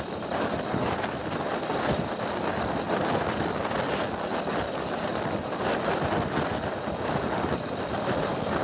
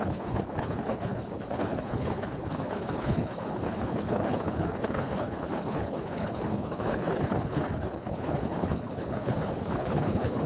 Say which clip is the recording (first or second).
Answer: first